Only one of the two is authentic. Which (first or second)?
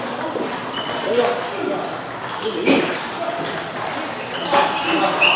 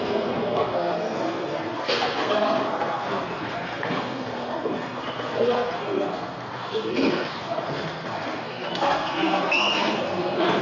first